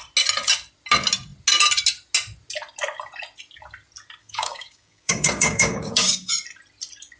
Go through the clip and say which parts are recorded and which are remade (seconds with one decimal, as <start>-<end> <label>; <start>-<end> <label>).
0.0-4.2 recorded; 4.2-6.3 remade; 6.3-7.2 recorded